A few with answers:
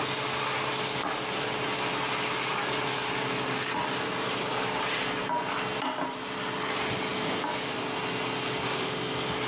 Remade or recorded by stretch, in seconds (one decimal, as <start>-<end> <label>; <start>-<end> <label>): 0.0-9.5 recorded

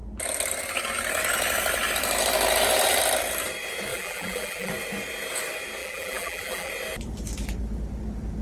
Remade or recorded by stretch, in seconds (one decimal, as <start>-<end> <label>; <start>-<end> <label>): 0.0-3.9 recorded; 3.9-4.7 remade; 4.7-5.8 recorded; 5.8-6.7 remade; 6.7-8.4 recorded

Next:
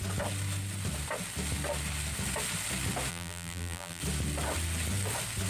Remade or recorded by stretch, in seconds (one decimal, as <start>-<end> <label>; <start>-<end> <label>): 0.0-3.1 recorded; 3.1-4.0 remade; 4.0-5.5 recorded